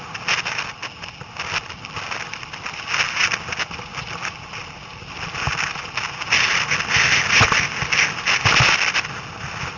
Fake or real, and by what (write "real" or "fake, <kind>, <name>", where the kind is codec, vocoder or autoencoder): real